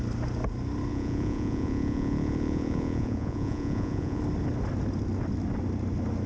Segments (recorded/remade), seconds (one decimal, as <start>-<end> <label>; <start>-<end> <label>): 0.0-0.9 recorded; 0.9-4.2 remade; 4.2-6.3 recorded